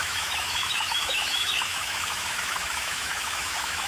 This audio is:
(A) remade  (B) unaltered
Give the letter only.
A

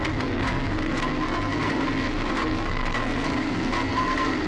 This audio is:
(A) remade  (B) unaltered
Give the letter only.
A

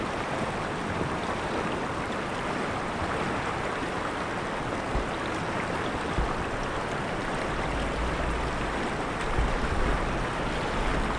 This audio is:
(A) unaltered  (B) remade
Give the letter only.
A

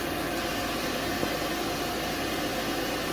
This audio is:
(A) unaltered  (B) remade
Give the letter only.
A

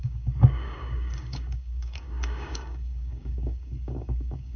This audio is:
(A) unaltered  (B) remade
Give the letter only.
B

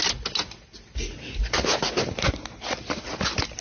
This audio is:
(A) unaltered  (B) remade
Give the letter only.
A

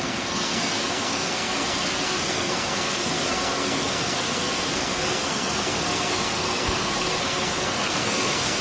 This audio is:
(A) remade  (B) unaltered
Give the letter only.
A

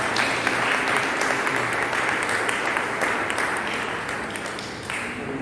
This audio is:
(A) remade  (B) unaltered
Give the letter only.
B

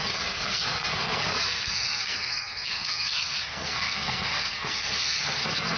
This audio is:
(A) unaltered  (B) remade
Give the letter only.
B